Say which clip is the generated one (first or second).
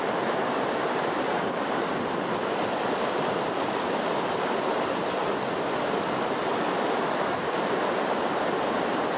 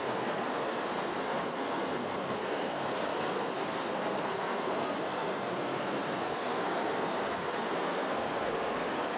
second